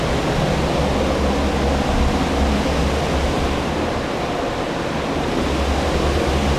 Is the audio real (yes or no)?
yes